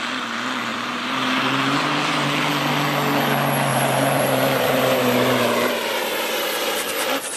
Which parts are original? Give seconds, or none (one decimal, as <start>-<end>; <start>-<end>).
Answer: 0.0-0.7; 2.5-3.7; 6.9-7.4